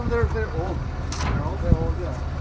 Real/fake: real